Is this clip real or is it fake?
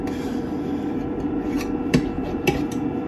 fake